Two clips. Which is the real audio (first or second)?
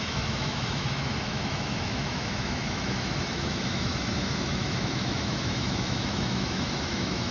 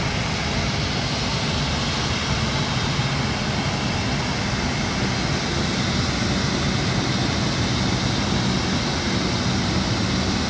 second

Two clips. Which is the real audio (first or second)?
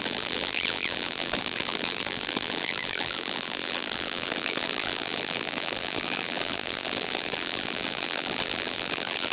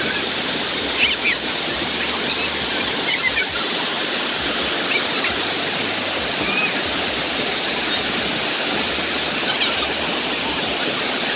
second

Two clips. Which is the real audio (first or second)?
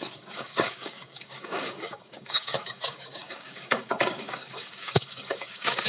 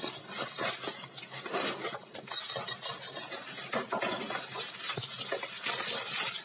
second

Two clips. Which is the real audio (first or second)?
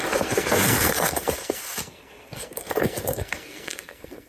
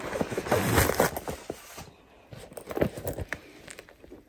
second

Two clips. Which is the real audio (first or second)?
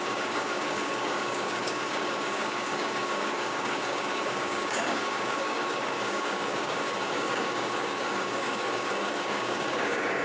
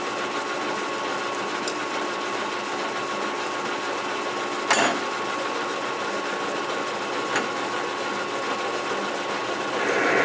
second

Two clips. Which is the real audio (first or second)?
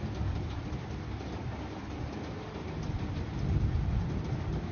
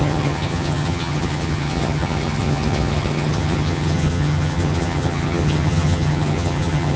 first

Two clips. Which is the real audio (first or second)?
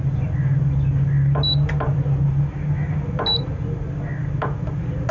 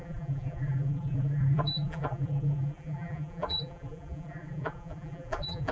first